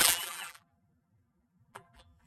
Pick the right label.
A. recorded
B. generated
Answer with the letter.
B